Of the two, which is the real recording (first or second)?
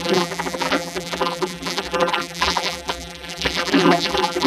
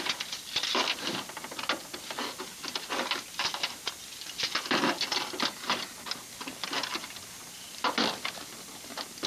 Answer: second